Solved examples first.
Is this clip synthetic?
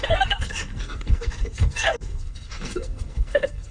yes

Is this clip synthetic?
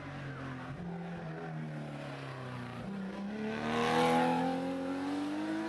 no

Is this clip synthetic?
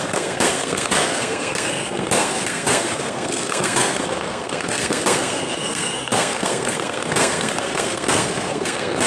yes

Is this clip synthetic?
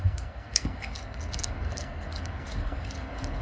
yes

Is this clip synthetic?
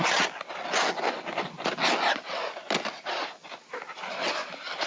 no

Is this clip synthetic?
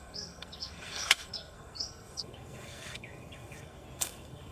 yes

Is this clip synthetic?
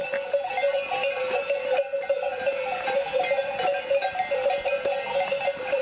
no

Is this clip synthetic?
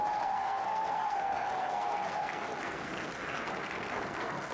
yes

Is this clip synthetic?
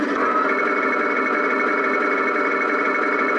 no